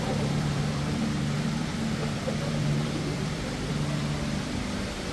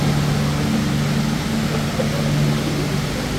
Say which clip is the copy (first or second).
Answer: first